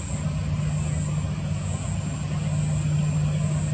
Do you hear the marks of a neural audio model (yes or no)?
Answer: no